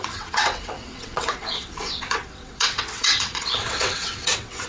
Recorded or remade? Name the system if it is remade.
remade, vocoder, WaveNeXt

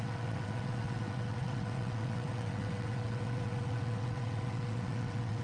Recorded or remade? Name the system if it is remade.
remade, vocoder, WaveNeXt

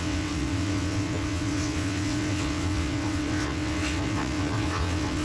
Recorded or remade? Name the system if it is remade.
remade, vocoder, WaveNeXt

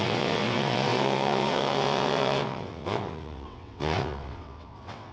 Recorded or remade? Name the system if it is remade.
remade, vocoder, WaveNeXt